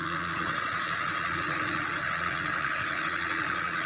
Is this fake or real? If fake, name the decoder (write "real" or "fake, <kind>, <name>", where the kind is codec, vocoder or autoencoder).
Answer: fake, vocoder, Vocos